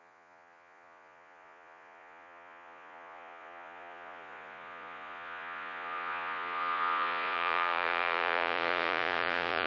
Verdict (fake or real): fake